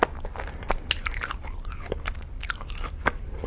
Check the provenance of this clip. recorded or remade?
recorded